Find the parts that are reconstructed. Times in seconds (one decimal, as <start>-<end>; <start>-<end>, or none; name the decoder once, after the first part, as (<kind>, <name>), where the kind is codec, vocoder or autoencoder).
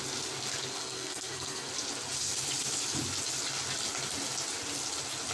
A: 0.7-1.7 (codec, SNAC)